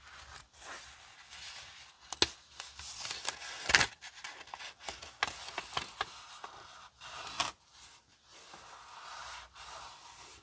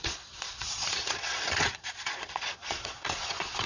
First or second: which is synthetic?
second